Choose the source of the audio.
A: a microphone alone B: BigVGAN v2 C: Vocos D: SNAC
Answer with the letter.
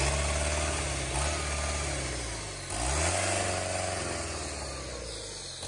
A